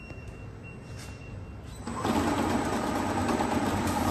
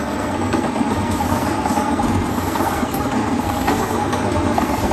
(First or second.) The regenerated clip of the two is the second